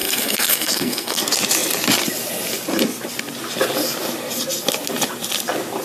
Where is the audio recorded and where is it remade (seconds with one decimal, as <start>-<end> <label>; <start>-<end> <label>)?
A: 0.0-1.2 remade; 1.2-5.8 recorded